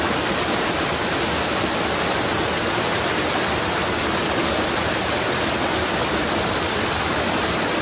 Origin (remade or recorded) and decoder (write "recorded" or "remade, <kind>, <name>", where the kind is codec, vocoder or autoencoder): recorded